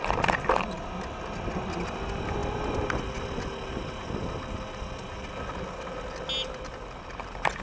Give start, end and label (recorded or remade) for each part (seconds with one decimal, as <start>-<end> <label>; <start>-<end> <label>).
0.0-7.6 recorded